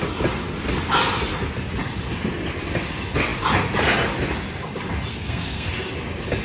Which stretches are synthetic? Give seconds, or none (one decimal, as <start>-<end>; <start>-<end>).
5.1-5.7